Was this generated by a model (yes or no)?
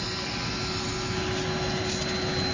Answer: no